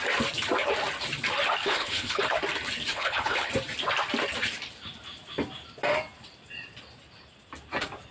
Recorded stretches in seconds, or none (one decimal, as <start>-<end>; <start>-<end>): 0.0-1.6; 2.2-2.9; 3.5-8.1